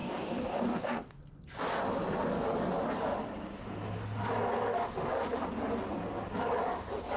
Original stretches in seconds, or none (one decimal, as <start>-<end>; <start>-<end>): 1.2-7.2